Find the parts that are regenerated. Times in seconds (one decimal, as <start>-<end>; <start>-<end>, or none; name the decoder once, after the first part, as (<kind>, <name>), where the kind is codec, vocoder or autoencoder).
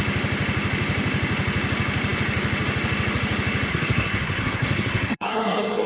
3.7-5.9 (codec, SNAC)